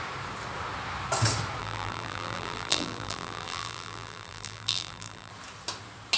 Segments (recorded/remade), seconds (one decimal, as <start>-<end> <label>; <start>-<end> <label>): 0.0-1.6 recorded; 1.6-5.3 remade; 5.3-6.2 recorded